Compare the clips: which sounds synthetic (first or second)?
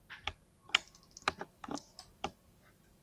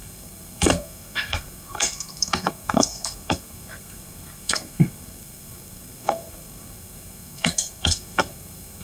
second